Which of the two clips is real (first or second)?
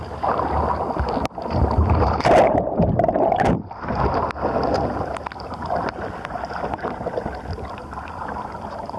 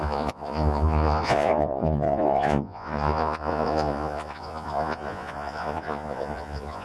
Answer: first